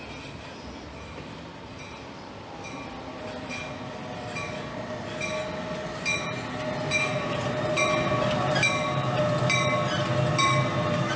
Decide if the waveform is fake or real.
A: real